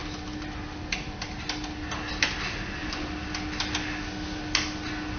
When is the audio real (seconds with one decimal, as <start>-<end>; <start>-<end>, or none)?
0.0-5.2